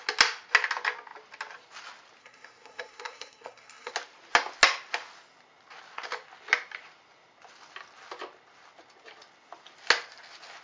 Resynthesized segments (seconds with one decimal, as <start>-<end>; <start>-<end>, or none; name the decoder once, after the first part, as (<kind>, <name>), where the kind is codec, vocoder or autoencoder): 2.2-3.9 (codec, SNAC)